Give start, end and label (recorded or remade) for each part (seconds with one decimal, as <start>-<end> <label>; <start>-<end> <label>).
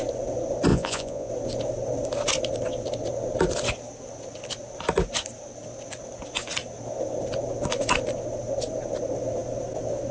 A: 0.0-0.7 recorded; 0.7-1.3 remade; 1.3-10.1 recorded